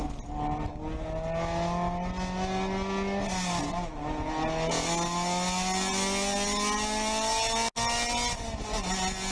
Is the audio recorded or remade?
recorded